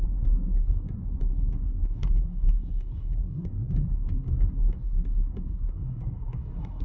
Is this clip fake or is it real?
fake